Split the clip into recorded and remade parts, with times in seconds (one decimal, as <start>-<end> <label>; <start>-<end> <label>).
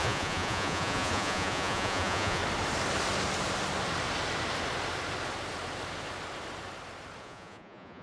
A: 0.0-2.4 remade; 2.4-7.2 recorded; 7.2-8.0 remade